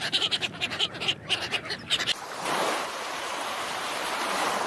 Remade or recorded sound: remade